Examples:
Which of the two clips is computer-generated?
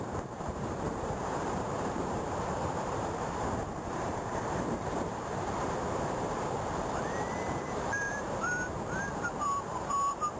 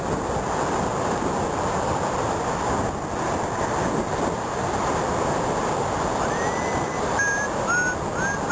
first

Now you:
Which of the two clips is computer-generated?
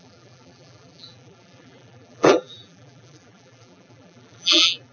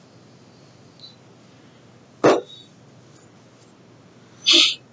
first